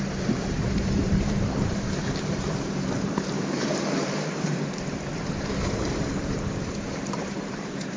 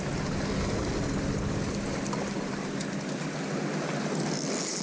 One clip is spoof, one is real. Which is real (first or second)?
second